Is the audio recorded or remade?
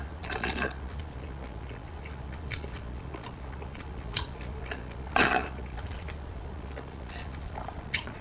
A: remade